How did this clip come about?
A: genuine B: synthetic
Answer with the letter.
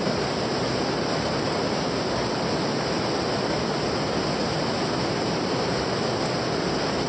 A